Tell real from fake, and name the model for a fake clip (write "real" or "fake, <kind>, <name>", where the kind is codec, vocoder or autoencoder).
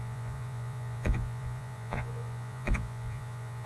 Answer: fake, vocoder, Vocos